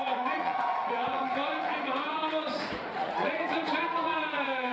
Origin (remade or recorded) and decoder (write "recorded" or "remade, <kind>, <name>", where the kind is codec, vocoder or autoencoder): remade, vocoder, Vocos